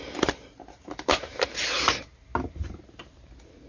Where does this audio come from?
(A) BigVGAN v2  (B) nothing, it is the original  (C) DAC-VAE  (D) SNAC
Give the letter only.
B